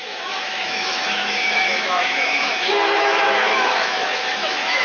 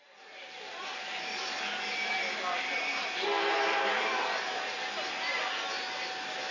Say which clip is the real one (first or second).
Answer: second